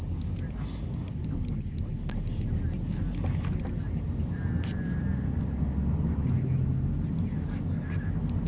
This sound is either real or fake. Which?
real